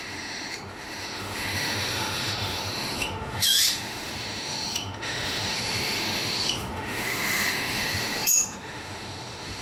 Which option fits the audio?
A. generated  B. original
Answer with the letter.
A